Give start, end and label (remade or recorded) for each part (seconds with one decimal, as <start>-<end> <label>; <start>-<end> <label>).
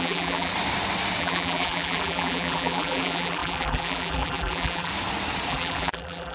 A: 0.0-0.5 remade; 0.5-1.2 recorded; 1.2-4.9 remade; 4.9-5.5 recorded; 5.5-6.3 remade